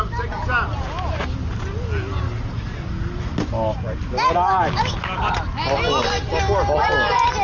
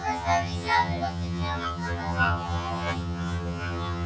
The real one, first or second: first